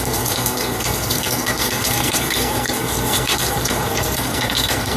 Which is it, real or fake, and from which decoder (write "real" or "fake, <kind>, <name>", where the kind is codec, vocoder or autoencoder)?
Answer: fake, codec, SNAC